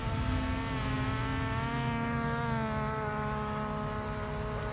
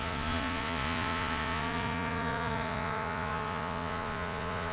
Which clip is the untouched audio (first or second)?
first